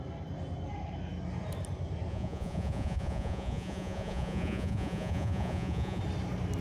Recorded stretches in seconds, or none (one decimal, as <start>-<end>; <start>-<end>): 0.0-2.1; 6.0-6.6